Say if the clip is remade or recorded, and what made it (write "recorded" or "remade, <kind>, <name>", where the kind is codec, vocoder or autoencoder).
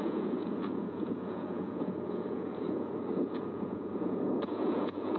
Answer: remade, vocoder, Vocos